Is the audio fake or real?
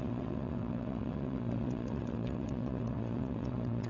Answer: fake